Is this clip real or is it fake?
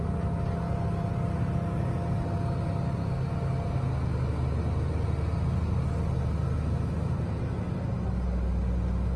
real